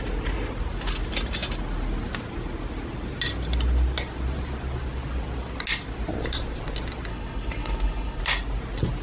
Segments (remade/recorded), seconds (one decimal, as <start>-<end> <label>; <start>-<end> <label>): 0.0-7.1 recorded; 7.1-8.2 remade; 8.2-9.0 recorded